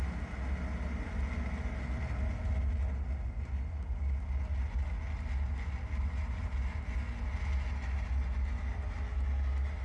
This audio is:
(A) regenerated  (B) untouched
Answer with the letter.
B